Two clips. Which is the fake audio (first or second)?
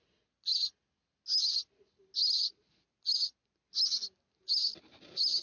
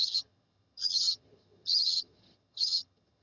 second